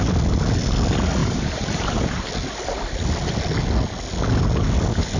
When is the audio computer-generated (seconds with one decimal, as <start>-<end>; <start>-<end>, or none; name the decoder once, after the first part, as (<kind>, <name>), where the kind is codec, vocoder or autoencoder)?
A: 1.2-2.3 (vocoder, BigVGAN v2)

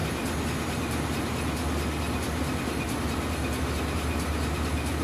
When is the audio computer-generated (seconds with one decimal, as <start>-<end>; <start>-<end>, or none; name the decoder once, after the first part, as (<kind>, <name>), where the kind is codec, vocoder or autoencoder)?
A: none

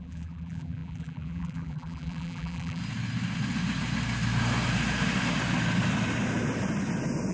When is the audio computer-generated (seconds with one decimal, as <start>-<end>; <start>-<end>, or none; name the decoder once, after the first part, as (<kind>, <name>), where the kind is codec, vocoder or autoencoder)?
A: 0.0-2.8 (vocoder, BigVGAN v2)

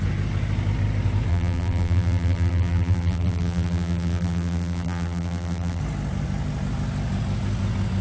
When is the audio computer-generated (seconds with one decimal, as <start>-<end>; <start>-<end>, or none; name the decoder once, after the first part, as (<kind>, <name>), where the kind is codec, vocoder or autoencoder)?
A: 1.3-5.8 (vocoder, BigVGAN v2)

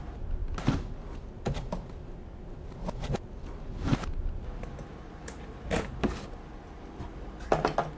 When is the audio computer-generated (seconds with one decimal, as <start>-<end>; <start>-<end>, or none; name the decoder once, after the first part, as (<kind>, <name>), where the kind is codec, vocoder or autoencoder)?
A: none